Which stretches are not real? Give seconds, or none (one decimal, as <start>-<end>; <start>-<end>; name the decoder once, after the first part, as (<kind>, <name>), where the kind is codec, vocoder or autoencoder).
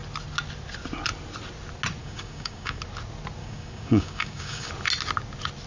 2.0-2.8 (codec, DAC); 3.4-4.7